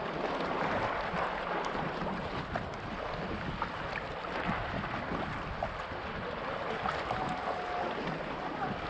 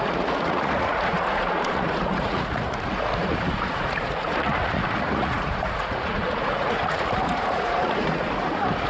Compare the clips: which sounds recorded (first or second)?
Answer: first